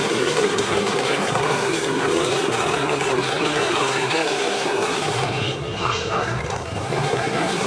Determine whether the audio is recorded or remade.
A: remade